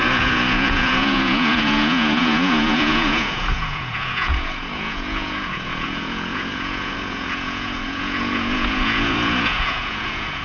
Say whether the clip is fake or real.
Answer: fake